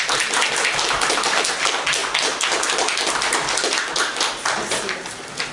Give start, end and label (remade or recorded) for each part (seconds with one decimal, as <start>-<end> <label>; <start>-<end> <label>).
0.0-5.5 recorded